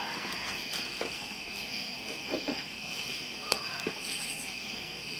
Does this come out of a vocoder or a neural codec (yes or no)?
yes